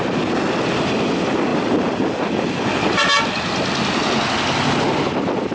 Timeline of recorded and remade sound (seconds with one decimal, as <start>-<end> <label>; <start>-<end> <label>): 0.0-1.5 recorded; 1.5-2.1 remade; 2.1-5.5 recorded